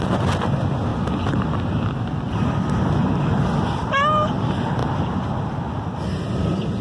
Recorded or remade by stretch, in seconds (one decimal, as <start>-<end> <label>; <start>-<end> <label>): 0.0-0.9 recorded; 0.9-2.7 remade; 2.7-4.8 recorded; 4.8-5.4 remade; 5.4-6.8 recorded